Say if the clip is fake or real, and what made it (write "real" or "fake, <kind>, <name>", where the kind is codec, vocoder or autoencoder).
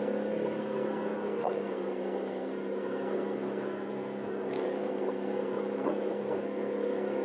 fake, codec, SNAC